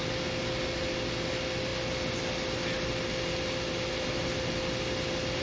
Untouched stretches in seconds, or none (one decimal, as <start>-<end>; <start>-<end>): 0.0-5.4